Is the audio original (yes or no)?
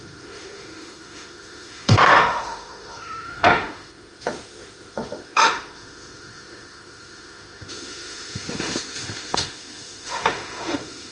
no